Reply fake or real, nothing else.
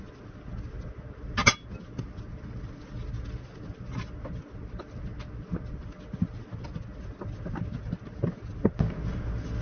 real